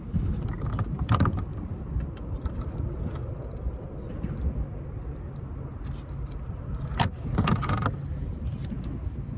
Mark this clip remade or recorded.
recorded